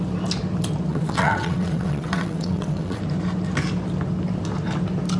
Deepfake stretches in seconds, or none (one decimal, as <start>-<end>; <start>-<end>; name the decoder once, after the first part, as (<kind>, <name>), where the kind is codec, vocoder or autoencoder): 0.9-3.0 (vocoder, WaveNeXt)